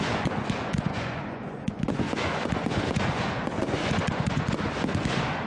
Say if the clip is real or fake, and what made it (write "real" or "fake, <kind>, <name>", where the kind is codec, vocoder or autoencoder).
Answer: fake, vocoder, Vocos